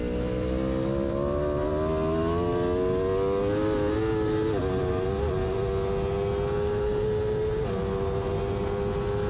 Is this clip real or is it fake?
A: real